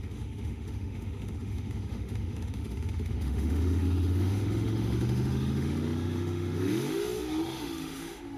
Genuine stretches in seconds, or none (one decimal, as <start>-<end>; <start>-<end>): none